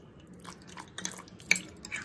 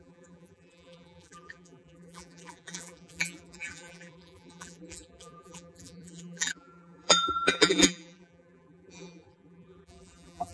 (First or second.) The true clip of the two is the first